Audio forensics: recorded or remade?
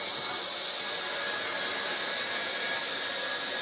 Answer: recorded